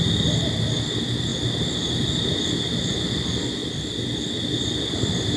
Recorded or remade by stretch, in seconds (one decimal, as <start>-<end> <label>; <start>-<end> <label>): 0.0-5.4 recorded